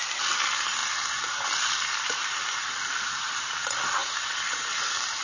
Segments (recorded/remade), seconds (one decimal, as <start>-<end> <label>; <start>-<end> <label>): 0.0-5.2 recorded